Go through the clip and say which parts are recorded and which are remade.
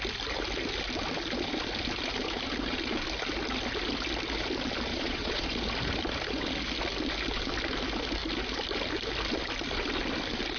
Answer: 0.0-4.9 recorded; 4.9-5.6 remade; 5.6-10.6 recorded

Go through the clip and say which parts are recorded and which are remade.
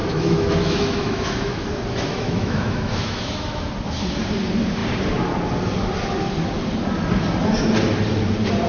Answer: 0.0-1.7 remade; 1.7-2.1 recorded; 2.1-3.7 remade; 3.7-8.7 recorded